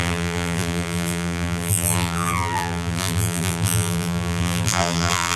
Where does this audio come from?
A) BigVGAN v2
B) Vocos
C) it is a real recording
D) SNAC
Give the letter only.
A